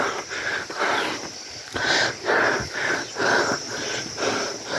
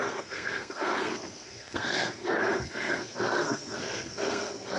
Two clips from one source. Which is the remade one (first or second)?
second